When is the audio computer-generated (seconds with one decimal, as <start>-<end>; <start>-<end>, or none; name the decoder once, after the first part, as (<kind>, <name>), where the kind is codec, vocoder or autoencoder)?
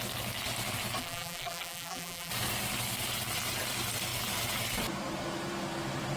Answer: 1.0-2.3 (vocoder, BigVGAN v2)